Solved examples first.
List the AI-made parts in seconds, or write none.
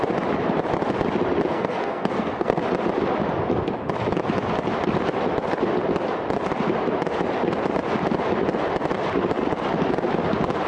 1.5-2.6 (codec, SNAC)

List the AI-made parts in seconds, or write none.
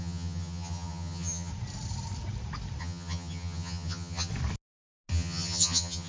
0.0-1.5 (vocoder, HiFi-GAN); 2.8-4.3; 5.1-6.1